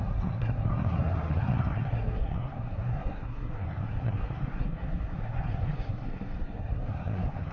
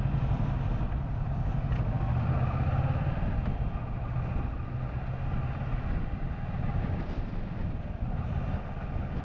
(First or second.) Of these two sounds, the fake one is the first